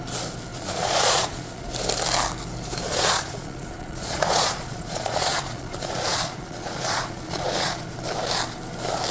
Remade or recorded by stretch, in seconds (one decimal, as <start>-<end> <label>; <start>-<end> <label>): 0.0-0.5 recorded; 0.5-1.7 remade; 1.7-2.9 recorded; 2.9-7.8 remade; 7.8-9.1 recorded